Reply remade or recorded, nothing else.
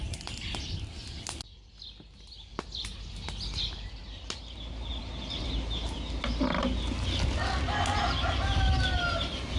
recorded